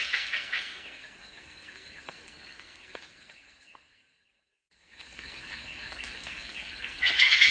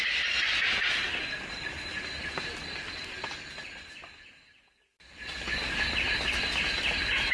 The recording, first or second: second